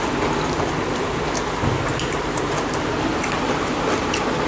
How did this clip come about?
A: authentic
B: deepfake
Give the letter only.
A